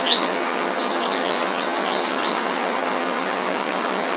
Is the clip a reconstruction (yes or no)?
yes